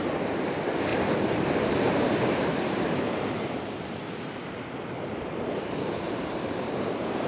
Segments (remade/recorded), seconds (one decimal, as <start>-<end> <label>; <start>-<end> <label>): 0.0-7.3 remade